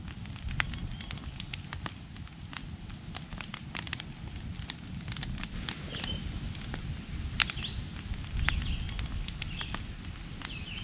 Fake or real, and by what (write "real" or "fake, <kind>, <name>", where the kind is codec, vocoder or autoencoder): real